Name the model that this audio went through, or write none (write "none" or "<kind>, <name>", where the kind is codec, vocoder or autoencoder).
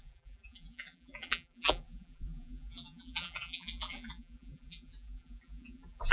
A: vocoder, BigVGAN v2